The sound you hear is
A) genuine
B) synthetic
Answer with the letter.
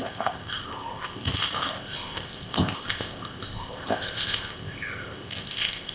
B